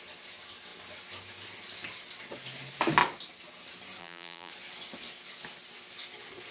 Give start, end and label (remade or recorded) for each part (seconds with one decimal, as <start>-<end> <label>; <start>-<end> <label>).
0.0-4.0 recorded; 4.0-4.5 remade; 4.5-6.5 recorded